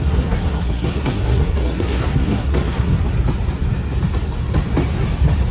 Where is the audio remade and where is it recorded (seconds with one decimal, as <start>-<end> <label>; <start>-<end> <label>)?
0.0-3.0 remade; 3.0-5.5 recorded